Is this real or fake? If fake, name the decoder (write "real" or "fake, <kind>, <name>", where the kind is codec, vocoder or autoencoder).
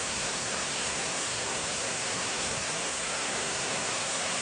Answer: fake, codec, SNAC